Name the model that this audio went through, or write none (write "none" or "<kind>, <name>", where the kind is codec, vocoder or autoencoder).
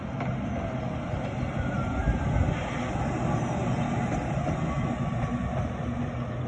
none